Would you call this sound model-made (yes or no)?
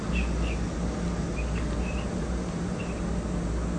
no